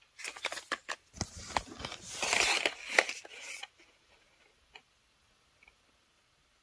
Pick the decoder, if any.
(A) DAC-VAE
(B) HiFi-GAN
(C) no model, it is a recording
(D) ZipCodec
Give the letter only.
C